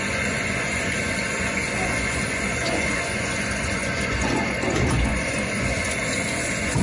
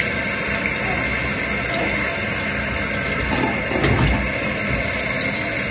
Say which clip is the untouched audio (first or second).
second